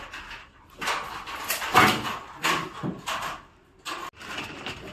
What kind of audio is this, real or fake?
real